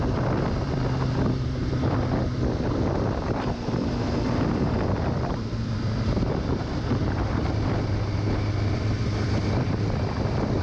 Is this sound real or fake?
fake